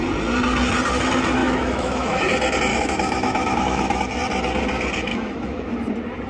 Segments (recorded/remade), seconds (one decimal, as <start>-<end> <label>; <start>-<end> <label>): 0.0-1.4 recorded; 1.4-2.2 remade; 2.2-2.7 recorded; 2.7-4.0 remade; 4.0-5.1 recorded; 5.1-5.7 remade; 5.7-6.3 recorded